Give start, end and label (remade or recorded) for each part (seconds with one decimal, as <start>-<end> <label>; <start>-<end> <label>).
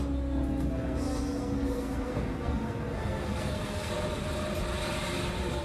0.0-0.5 recorded; 0.5-3.9 remade; 3.9-5.6 recorded